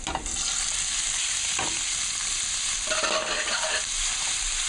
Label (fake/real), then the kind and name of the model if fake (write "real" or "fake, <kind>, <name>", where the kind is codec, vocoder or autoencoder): real